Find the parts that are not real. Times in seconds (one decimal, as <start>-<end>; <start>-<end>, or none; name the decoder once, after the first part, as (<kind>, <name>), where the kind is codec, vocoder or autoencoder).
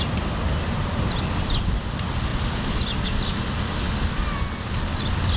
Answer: none